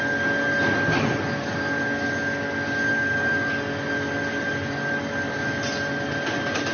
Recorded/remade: recorded